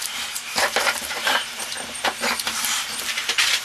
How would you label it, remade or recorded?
remade